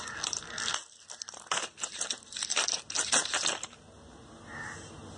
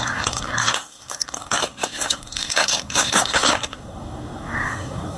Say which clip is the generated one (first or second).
second